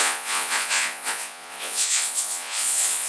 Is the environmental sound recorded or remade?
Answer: remade